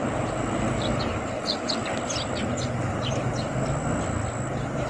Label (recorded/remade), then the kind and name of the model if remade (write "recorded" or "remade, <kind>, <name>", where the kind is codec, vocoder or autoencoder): recorded